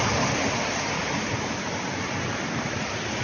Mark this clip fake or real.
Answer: real